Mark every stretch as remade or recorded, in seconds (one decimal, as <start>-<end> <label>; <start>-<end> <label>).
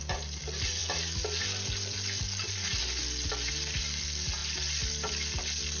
0.0-5.8 recorded